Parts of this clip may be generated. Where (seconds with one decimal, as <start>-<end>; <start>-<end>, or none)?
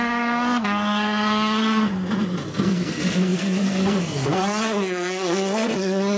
0.0-1.9; 2.5-6.2